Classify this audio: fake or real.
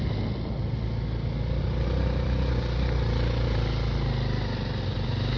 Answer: real